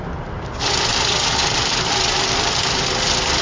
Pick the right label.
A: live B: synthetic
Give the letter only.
A